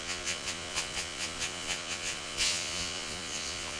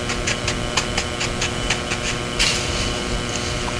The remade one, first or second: first